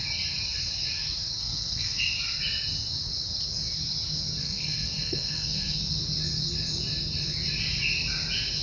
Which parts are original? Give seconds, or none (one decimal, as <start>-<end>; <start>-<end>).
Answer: 0.0-1.4; 2.0-4.4; 6.0-8.6